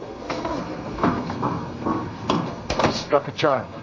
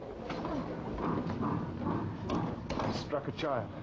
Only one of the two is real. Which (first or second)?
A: second